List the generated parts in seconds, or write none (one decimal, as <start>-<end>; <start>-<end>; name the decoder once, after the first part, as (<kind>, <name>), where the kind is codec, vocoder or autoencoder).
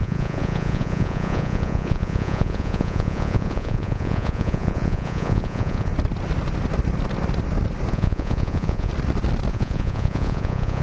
0.0-5.9 (vocoder, Vocos); 7.9-8.9; 9.5-10.8